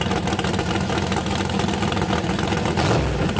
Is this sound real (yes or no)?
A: yes